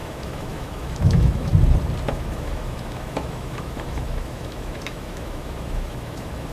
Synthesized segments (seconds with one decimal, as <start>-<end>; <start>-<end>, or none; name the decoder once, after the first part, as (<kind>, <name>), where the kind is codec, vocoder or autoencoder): 0.0-1.5 (autoencoder, DAC-VAE); 2.1-6.5